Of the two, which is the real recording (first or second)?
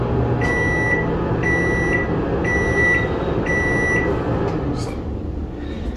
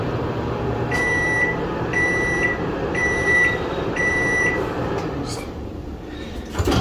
first